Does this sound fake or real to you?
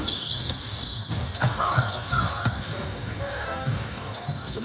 fake